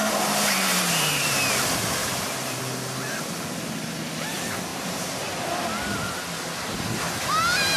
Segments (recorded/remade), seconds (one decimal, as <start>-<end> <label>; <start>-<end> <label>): 0.0-1.5 remade; 1.5-2.0 recorded; 2.0-2.6 remade; 2.6-4.7 recorded; 4.7-5.6 remade; 5.6-7.8 recorded